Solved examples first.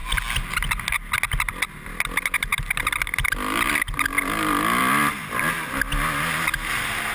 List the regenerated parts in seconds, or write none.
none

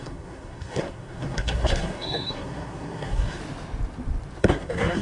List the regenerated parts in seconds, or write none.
0.0-3.4 (codec, SNAC); 4.4-5.0

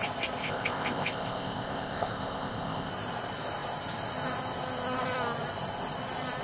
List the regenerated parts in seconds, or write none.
0.4-2.9 (codec, ZipCodec)

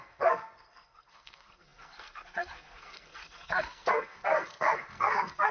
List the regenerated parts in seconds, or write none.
0.0-5.5 (codec, SNAC)

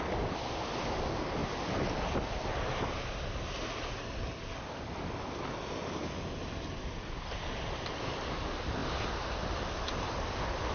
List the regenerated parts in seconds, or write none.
none

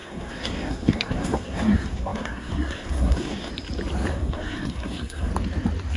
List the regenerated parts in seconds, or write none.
0.0-3.5 (codec, SNAC); 4.1-5.3

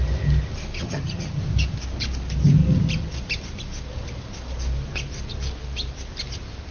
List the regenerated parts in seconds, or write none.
0.8-1.4 (vocoder, HiFi-GAN)